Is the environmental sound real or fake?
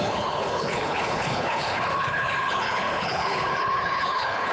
fake